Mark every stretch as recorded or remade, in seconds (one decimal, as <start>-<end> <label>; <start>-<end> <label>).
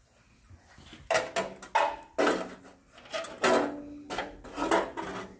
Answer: 0.0-5.4 recorded